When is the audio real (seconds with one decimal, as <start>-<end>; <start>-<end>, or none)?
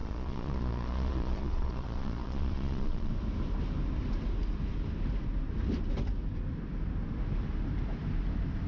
3.1-8.7